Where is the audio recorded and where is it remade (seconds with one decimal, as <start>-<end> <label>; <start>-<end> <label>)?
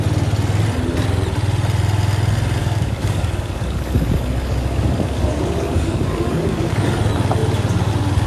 0.0-2.6 recorded; 2.6-7.0 remade; 7.0-8.3 recorded